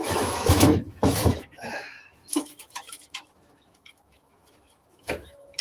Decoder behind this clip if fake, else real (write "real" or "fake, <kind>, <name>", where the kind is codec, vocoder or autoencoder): fake, autoencoder, DAC-VAE